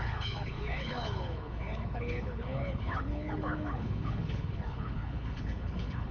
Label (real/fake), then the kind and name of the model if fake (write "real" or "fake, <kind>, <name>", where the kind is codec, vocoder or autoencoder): fake, codec, HILCodec